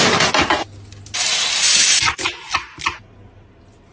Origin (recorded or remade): recorded